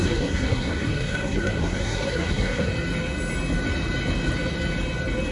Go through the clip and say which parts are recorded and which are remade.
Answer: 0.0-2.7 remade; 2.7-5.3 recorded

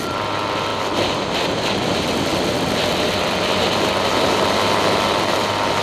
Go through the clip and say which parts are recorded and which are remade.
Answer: 0.0-5.8 recorded

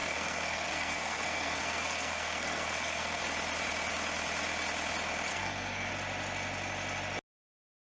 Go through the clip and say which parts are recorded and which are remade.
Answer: 0.0-3.2 remade; 3.2-5.3 recorded; 5.3-5.9 remade; 5.9-7.8 recorded